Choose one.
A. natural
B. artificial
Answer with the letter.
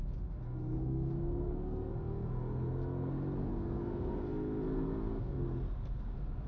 B